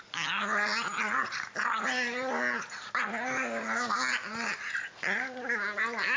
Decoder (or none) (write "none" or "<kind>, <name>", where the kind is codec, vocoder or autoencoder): none